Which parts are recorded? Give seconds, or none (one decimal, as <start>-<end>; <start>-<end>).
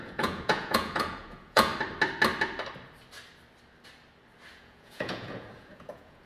1.7-4.5